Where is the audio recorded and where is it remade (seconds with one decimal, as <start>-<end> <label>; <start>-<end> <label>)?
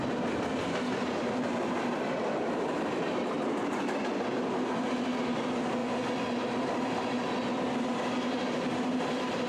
0.0-9.5 recorded